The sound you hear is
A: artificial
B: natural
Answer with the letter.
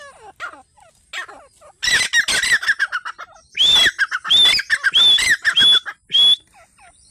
B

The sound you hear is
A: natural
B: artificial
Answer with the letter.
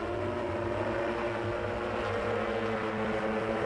A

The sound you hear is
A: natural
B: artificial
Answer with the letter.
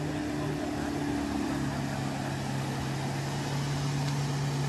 A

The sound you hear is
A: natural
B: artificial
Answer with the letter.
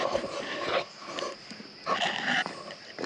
A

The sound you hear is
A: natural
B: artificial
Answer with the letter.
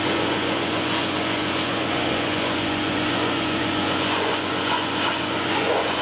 B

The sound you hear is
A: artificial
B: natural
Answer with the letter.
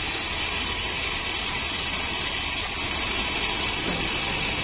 B